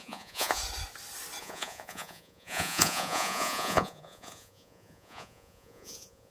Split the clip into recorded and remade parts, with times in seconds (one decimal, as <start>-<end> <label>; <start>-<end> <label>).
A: 0.0-0.6 remade; 0.6-1.4 recorded; 1.4-6.3 remade